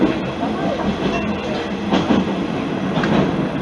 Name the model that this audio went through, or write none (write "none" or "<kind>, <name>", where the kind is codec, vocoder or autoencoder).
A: none